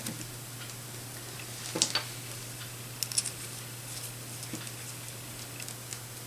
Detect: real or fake real